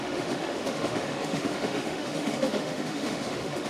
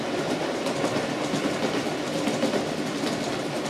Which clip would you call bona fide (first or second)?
second